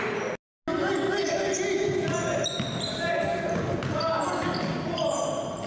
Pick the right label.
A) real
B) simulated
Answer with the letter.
A